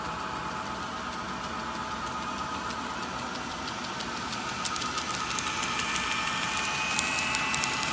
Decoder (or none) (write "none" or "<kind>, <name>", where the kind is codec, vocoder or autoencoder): vocoder, BigVGAN v2